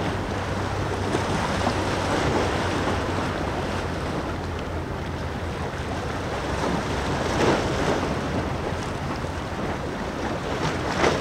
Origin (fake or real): real